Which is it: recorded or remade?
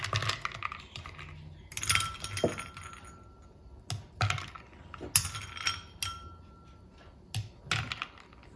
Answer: recorded